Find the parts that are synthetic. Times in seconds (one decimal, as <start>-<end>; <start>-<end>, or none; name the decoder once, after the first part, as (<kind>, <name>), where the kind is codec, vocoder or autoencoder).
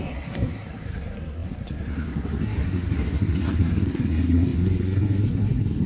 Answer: 0.0-5.9 (codec, SNAC)